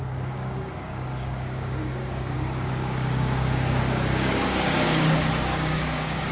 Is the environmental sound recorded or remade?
remade